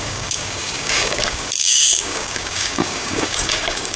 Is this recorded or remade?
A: remade